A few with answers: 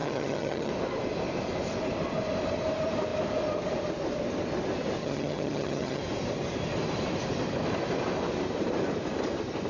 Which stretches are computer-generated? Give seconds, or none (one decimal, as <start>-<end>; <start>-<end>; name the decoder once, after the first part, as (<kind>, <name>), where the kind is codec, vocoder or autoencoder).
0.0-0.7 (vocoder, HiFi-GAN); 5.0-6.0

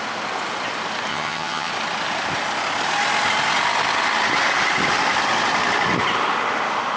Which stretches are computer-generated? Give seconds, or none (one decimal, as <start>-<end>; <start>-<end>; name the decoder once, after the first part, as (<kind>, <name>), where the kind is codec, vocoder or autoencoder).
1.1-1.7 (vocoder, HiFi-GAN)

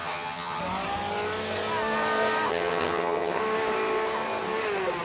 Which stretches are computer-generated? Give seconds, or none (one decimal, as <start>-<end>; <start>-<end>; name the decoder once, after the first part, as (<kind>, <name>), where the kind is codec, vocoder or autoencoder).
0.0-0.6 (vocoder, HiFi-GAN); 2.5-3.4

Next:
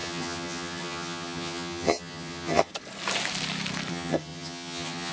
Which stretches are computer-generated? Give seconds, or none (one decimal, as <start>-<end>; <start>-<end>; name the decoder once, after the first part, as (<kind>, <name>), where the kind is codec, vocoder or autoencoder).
0.0-2.7 (vocoder, HiFi-GAN); 3.9-5.1

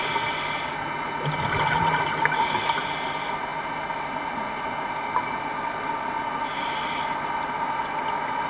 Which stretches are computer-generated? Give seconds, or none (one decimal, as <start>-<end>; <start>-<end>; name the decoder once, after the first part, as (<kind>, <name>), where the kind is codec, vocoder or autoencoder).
none